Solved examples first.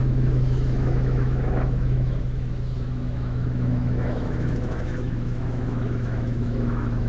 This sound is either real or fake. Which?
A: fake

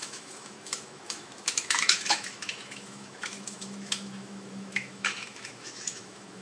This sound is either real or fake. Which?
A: fake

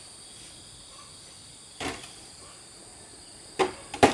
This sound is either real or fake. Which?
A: real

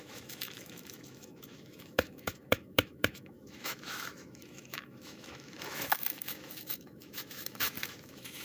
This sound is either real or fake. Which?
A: fake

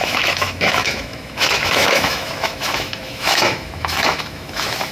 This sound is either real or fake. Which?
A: fake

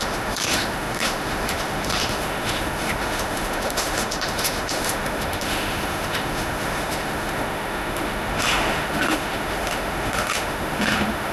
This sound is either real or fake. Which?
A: fake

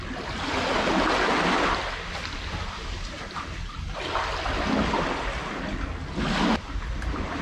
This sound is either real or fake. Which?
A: real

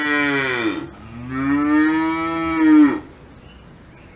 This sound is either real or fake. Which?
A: real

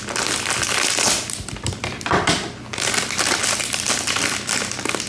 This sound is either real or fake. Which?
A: real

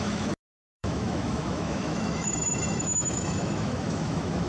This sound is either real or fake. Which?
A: fake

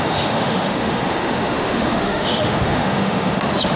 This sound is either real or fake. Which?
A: fake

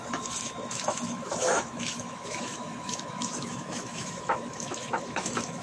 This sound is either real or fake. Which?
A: fake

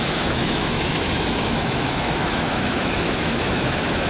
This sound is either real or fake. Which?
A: fake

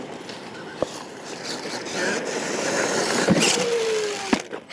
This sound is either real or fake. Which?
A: real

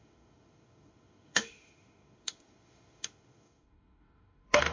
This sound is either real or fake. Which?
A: fake